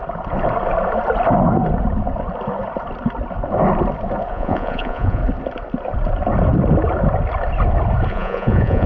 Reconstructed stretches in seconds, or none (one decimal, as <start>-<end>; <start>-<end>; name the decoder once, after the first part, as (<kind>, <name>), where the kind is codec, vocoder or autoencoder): 4.3-5.2 (vocoder, Vocos); 8.1-8.9